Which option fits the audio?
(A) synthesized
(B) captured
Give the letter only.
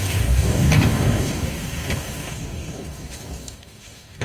A